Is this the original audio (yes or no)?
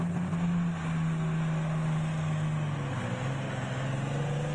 yes